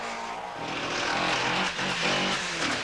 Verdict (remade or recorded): recorded